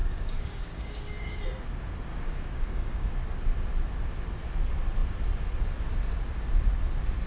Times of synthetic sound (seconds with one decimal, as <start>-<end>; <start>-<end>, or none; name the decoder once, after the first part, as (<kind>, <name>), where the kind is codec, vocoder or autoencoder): 0.0-1.4 (codec, DAC); 2.1-3.1